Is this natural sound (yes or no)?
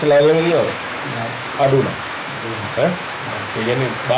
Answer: no